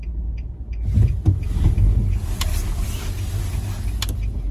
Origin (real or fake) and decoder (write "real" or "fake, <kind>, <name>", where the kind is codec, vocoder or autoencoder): real